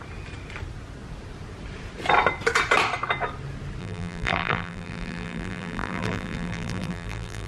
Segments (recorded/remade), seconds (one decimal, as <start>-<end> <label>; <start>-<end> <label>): 0.0-3.8 recorded; 3.8-7.5 remade